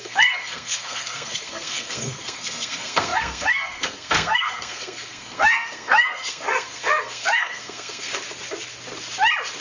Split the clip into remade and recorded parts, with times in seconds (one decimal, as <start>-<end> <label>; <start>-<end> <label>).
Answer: 0.0-8.1 remade; 8.1-9.6 recorded